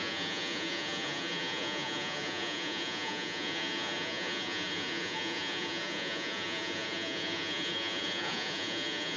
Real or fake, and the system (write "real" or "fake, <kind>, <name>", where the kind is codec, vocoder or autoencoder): fake, vocoder, Vocos